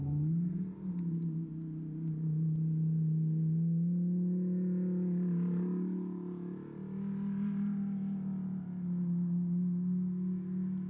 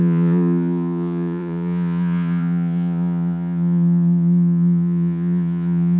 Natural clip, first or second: first